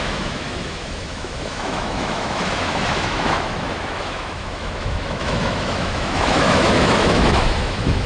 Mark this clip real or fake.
fake